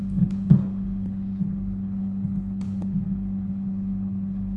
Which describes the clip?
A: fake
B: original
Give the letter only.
A